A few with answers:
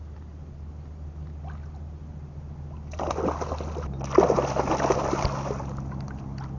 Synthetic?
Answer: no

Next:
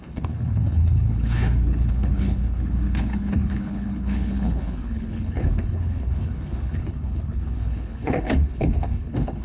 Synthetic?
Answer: yes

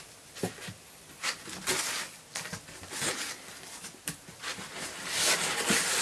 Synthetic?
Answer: no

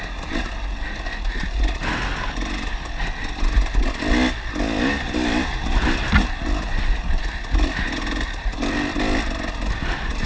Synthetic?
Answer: no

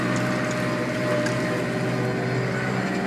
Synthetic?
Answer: no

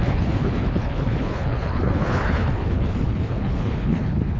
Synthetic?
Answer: yes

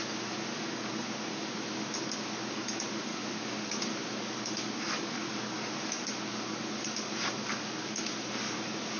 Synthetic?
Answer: yes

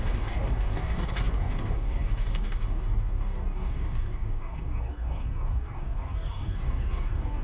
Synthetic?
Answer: yes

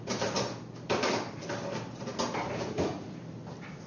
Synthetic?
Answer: no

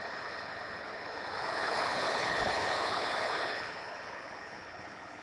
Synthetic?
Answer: yes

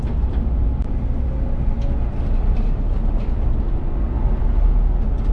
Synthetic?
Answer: no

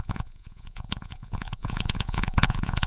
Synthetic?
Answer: yes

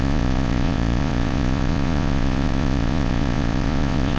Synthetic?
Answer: yes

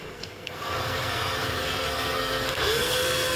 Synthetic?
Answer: yes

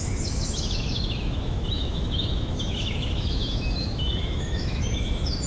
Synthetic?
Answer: yes